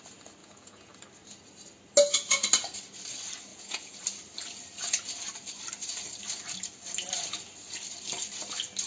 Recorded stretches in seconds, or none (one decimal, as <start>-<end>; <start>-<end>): 0.0-0.4; 0.9-3.5; 4.0-8.9